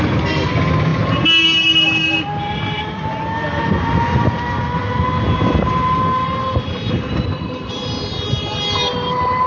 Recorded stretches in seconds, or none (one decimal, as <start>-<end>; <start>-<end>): 0.0-9.5

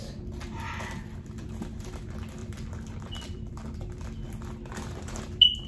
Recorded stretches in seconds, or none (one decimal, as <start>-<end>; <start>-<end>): 0.0-2.4; 3.7-5.7

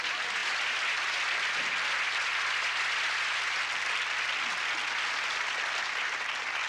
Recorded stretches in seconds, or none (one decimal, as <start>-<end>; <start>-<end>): 0.0-6.7

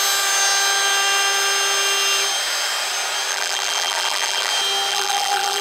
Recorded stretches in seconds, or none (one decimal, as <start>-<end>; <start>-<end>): 0.0-3.3; 4.5-4.9

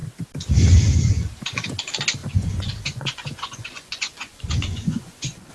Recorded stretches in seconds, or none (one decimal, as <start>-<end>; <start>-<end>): 0.0-2.2